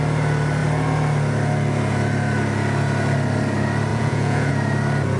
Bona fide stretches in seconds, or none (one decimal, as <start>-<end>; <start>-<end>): 0.0-3.9; 4.5-5.2